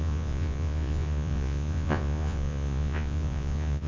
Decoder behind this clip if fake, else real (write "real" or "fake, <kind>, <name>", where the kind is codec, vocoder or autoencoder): fake, vocoder, Vocos